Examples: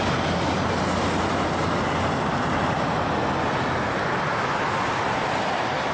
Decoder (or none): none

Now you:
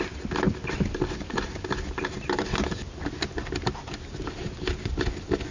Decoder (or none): none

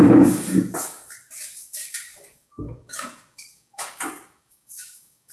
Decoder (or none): codec, DAC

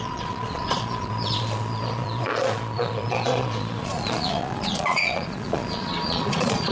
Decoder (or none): vocoder, Vocos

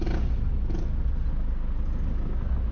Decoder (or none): none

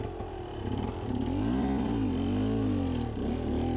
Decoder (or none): none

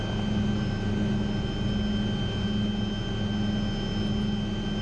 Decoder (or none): none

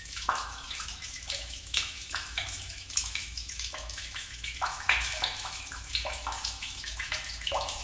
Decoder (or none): autoencoder, DAC-VAE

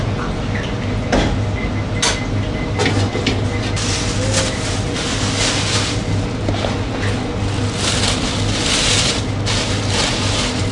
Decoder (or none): none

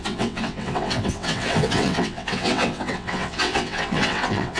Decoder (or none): vocoder, WaveNeXt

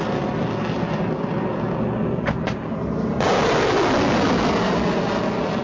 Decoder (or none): none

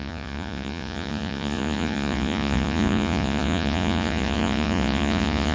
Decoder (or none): vocoder, Vocos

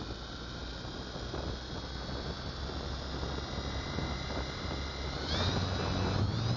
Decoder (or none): none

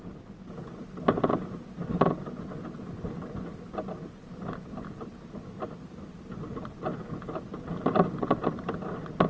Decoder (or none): vocoder, BigVGAN v2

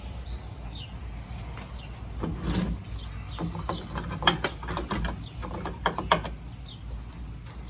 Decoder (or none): none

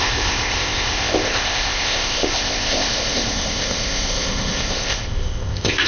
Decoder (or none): codec, ZipCodec